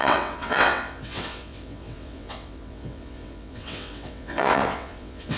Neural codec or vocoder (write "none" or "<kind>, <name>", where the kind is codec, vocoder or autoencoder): vocoder, WaveNeXt